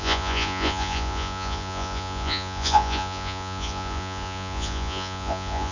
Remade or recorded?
remade